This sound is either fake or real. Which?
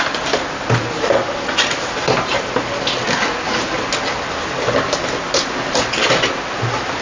real